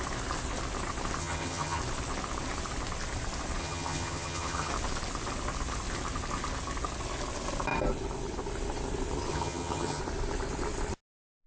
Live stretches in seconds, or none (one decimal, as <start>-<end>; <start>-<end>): 0.0-1.2; 1.8-3.6; 4.7-9.3; 10.0-11.5